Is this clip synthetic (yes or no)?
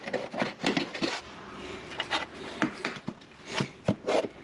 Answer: no